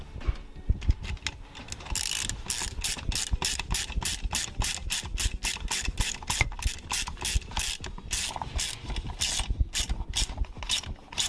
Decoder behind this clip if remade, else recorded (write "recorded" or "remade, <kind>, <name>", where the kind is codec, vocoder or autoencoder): recorded